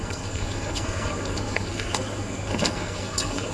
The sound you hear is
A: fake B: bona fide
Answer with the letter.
A